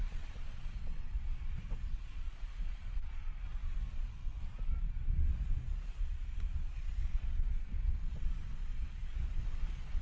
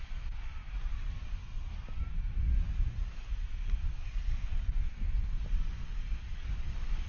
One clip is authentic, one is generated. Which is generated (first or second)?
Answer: first